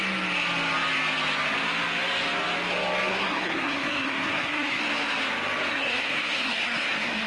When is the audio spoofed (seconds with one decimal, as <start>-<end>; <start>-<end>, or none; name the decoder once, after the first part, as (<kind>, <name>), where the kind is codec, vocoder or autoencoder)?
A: 3.1-4.8 (codec, SNAC); 5.7-7.3